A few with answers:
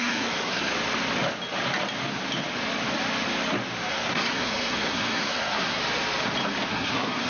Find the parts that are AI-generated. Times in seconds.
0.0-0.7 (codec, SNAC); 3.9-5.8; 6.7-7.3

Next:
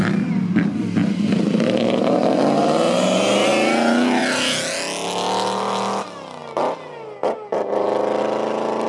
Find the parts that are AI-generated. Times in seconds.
none

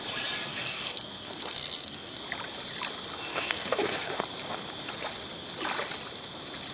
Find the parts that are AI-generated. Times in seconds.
0.5-2.2 (codec, SNAC); 3.3-4.1